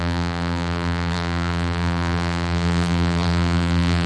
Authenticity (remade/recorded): remade